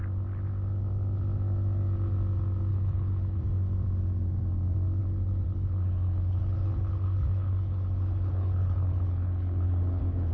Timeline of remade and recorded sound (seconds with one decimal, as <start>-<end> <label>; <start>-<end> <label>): 0.0-2.7 recorded; 2.7-3.4 remade; 3.4-5.0 recorded; 5.0-10.3 remade

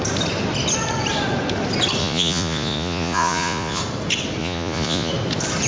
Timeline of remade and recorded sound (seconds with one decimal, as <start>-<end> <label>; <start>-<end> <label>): 0.0-2.0 recorded; 2.0-3.8 remade; 3.8-4.4 recorded; 4.4-5.1 remade; 5.1-5.7 recorded

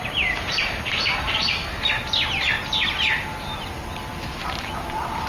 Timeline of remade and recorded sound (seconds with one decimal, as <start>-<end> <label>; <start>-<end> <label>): 0.0-1.6 remade; 1.6-4.4 recorded; 4.4-5.3 remade